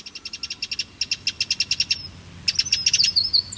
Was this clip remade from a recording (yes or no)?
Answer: no